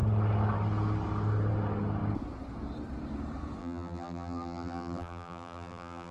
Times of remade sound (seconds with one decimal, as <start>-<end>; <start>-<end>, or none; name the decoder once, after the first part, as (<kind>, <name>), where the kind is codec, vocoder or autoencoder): 3.6-6.1 (vocoder, BigVGAN v2)